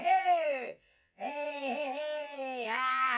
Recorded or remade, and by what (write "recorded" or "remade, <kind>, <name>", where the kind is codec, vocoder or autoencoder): remade, vocoder, WaveNeXt